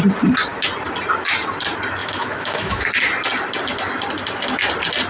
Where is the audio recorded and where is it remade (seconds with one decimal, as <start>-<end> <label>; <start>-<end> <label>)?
0.0-2.0 recorded; 2.0-2.9 remade; 2.9-5.1 recorded